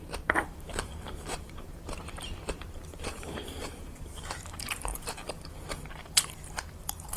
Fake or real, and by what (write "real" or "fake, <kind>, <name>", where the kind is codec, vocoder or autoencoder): fake, vocoder, BigVGAN v2